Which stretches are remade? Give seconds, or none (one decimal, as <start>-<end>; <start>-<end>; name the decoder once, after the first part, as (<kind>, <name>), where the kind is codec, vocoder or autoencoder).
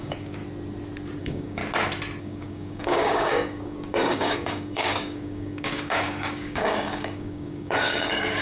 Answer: 0.0-0.4 (codec, DAC); 1.2-1.6; 2.2-8.4